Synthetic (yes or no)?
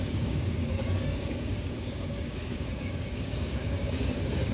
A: yes